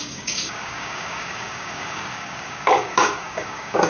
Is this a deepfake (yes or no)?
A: yes